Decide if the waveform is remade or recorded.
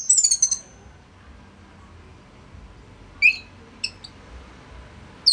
recorded